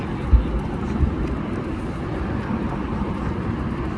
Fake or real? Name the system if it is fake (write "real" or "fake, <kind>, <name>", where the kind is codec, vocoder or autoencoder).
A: real